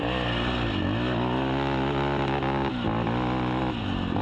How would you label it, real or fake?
real